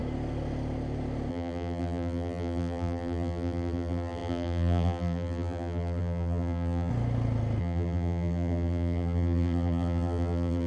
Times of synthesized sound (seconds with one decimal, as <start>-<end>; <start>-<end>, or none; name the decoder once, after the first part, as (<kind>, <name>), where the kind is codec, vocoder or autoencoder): 1.3-6.9 (vocoder, BigVGAN v2); 7.6-10.7